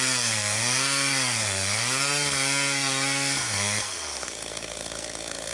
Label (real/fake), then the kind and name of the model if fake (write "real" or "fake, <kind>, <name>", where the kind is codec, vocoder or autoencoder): fake, codec, SNAC